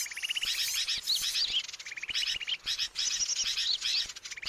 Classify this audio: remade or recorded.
recorded